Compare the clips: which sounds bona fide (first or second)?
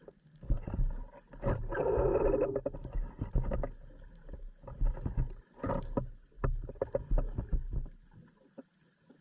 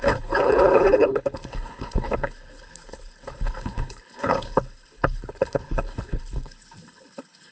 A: first